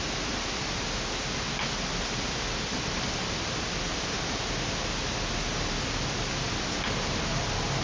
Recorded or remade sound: recorded